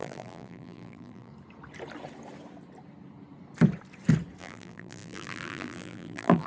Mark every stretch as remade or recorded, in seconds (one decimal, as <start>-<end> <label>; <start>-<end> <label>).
0.0-1.3 remade; 1.3-4.4 recorded; 4.4-6.5 remade